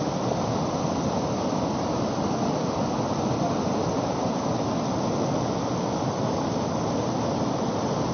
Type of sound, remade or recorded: recorded